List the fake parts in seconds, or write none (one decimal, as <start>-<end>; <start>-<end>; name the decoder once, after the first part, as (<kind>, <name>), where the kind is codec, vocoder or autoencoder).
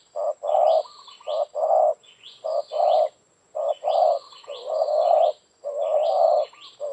1.6-5.7 (vocoder, Vocos)